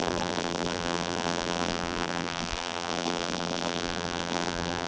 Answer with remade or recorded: remade